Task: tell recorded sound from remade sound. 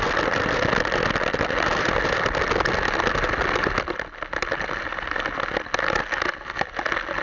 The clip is recorded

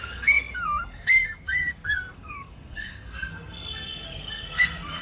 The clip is remade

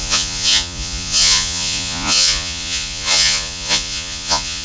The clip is remade